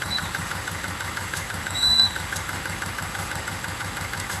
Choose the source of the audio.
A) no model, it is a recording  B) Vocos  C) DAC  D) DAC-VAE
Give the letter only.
D